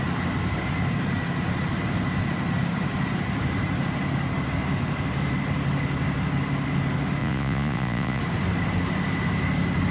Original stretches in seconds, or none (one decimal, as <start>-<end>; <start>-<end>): 0.0-7.2; 8.2-9.9